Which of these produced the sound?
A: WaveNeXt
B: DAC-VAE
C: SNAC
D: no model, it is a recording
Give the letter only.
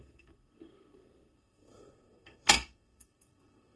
C